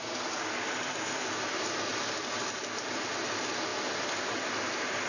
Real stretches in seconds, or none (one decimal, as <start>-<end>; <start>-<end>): 0.0-5.1